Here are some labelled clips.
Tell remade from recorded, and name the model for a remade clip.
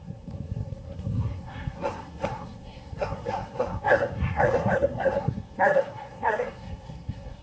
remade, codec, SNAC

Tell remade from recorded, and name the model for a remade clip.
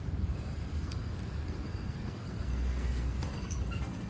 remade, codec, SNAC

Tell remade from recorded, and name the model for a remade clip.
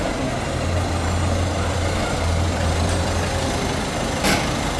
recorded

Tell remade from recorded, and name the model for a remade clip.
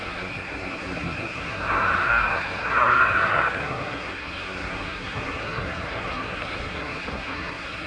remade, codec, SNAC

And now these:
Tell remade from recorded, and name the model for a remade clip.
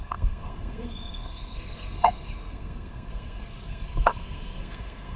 remade, codec, SNAC